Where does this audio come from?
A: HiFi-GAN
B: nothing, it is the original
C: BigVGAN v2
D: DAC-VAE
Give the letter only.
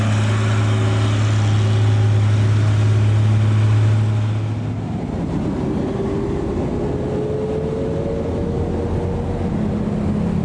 B